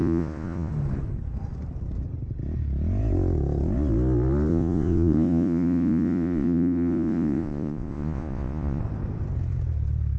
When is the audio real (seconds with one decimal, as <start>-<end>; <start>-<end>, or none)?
0.7-4.5; 8.8-10.2